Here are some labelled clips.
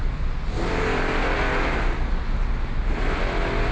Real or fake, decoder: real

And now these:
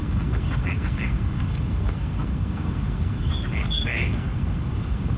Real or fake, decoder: fake, codec, SNAC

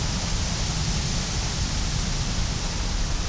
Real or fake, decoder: real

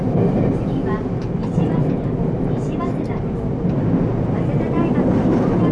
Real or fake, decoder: real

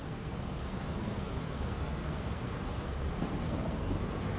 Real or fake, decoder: fake, codec, SNAC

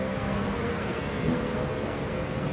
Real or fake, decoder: fake, codec, SNAC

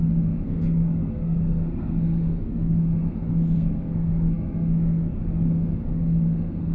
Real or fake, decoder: fake, codec, SNAC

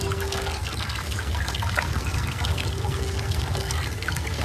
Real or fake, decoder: fake, codec, SNAC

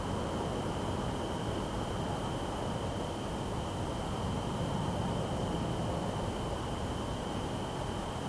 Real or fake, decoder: real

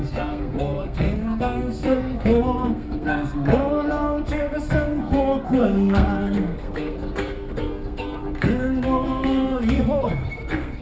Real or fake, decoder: fake, codec, SNAC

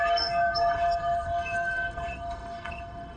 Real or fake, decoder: fake, codec, SNAC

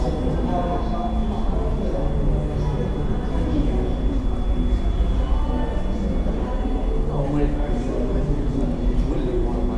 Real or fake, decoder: real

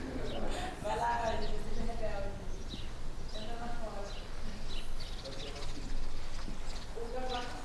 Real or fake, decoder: real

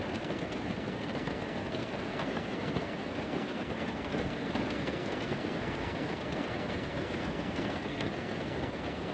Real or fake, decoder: fake, codec, SNAC